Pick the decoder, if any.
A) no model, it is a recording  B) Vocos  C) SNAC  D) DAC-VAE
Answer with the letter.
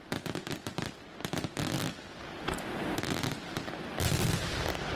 A